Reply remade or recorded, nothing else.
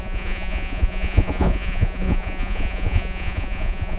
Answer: remade